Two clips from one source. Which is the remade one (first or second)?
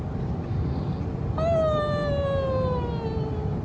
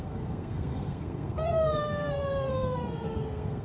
second